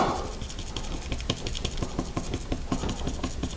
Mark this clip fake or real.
real